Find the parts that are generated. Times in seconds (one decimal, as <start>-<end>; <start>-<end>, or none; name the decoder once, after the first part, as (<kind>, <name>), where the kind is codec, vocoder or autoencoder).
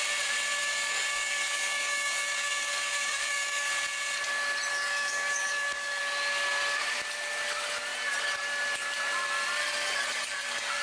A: 0.6-3.7 (codec, DAC); 4.7-6.0; 10.2-10.8